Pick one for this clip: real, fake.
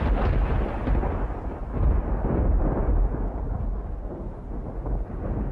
real